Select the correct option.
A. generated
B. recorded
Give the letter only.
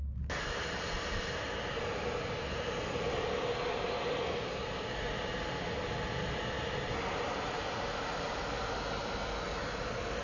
B